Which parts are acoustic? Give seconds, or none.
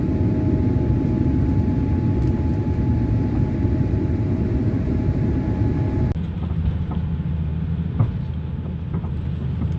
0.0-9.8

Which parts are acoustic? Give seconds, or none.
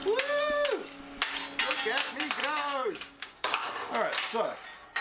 0.0-2.4; 3.9-5.0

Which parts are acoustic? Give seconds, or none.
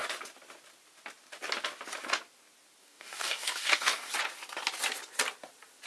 0.0-2.8; 4.1-5.9